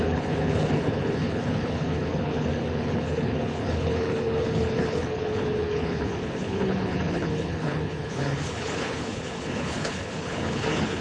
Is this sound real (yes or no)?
no